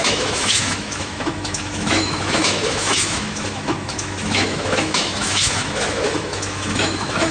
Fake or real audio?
fake